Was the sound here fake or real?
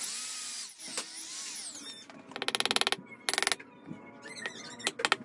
real